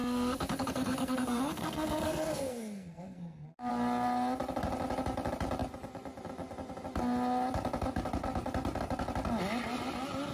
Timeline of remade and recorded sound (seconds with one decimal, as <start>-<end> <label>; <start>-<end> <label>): 0.0-3.7 remade; 3.7-10.3 recorded